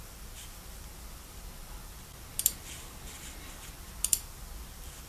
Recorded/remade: recorded